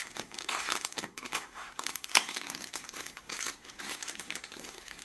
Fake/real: fake